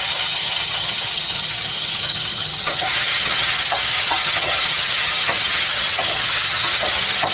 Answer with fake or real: fake